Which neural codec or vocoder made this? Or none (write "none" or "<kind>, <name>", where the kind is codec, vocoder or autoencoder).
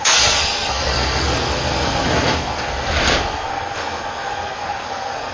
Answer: codec, SNAC